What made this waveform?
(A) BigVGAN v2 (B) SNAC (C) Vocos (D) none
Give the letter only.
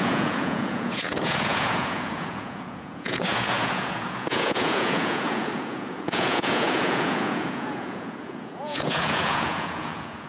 C